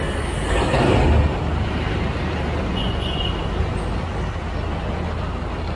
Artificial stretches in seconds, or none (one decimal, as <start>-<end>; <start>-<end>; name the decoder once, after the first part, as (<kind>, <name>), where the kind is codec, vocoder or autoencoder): 2.7-3.3 (vocoder, Vocos)